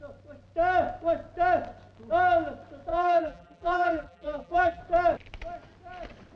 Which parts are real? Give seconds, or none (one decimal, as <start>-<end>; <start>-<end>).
0.0-2.9; 4.8-6.4